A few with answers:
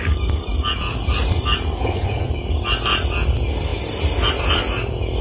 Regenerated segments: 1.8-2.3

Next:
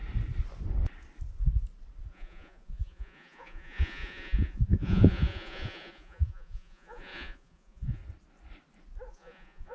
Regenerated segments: 2.1-8.0; 9.1-9.7

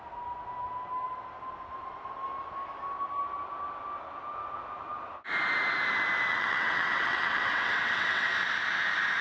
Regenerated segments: 6.3-8.3

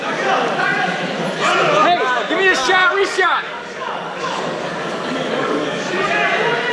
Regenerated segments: 2.8-6.1

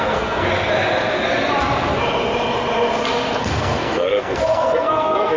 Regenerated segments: 0.0-0.5; 3.4-5.4

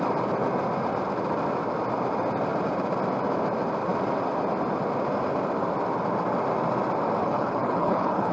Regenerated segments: 7.2-8.3

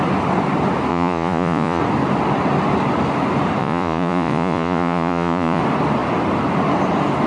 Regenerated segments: 0.9-1.8; 3.6-5.6